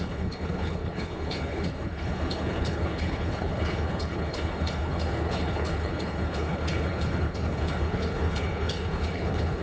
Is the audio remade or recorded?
remade